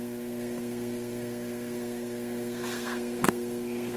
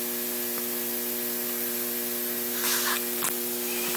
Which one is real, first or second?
second